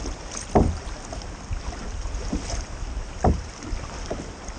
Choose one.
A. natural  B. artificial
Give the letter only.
A